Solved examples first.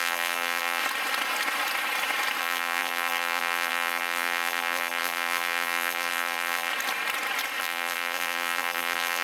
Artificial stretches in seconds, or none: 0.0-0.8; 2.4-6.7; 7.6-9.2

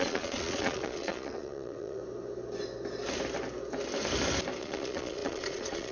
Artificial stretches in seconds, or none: 0.0-2.0; 4.6-5.9

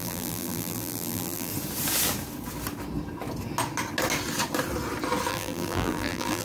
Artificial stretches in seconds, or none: 0.0-1.5; 5.3-6.4

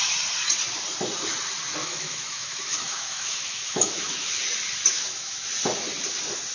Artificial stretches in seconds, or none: 1.8-4.4; 4.9-5.5

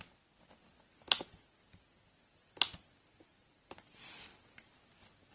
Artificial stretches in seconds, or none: none

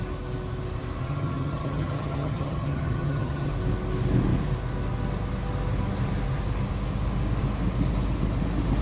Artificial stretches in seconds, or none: 1.0-3.5

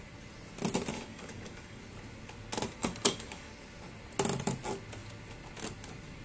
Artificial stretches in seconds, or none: 0.9-1.8; 2.8-3.5